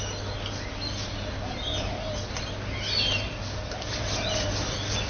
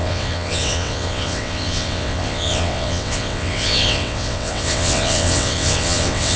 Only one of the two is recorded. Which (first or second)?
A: first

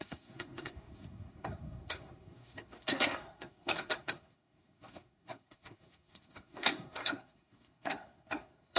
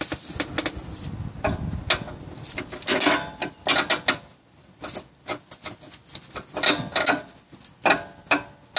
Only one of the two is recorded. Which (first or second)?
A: second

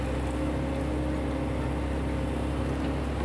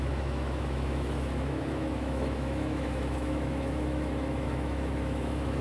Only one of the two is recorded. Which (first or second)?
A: first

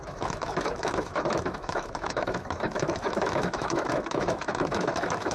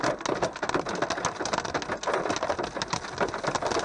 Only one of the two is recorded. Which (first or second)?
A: second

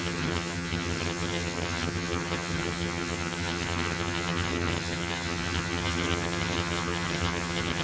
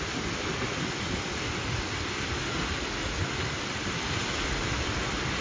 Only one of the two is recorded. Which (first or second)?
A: second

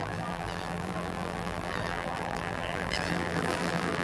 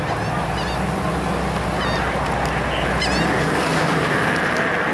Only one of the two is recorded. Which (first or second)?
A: second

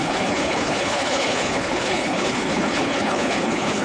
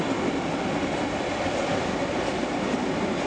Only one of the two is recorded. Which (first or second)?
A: second